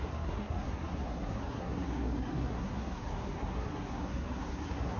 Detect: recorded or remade remade